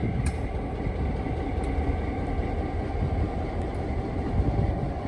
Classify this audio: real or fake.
fake